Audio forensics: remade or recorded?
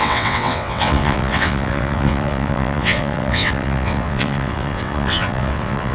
remade